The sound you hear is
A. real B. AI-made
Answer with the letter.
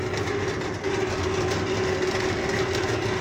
A